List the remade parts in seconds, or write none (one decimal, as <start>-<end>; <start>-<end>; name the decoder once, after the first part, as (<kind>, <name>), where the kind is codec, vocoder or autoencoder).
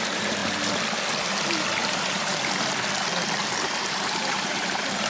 1.8-2.7 (vocoder, BigVGAN v2); 3.4-5.1